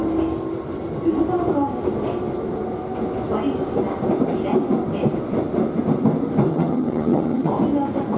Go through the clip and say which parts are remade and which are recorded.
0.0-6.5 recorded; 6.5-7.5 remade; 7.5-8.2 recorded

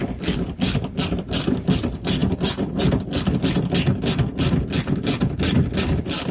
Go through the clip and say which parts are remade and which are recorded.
0.0-6.3 recorded

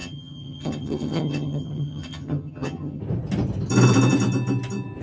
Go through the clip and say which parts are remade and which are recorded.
0.0-3.0 remade; 3.0-5.0 recorded

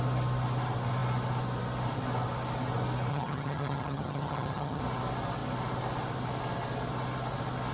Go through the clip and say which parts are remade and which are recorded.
0.0-3.1 recorded; 3.1-4.8 remade; 4.8-7.7 recorded

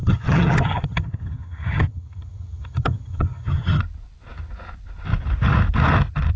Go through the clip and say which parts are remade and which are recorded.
0.0-3.8 remade; 3.8-6.4 recorded

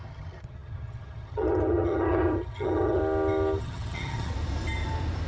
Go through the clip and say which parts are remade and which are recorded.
0.0-3.0 remade; 3.0-3.6 recorded; 3.6-4.3 remade; 4.3-5.3 recorded

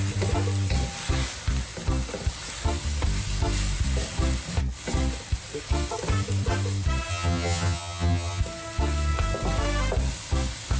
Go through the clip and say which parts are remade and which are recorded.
0.0-7.1 recorded; 7.1-8.4 remade; 8.4-10.8 recorded